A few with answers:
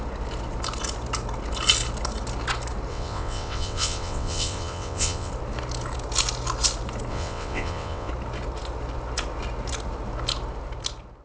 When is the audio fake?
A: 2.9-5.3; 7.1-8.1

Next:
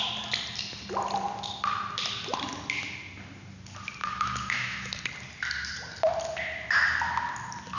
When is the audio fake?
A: 4.0-5.0

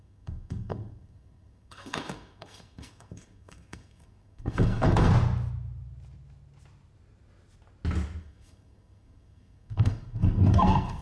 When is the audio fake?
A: 0.0-5.1; 8.2-11.0